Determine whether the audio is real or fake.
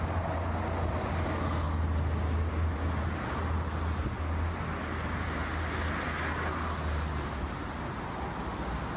real